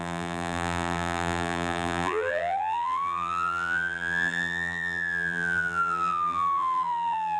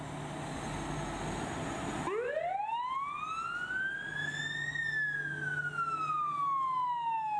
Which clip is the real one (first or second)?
second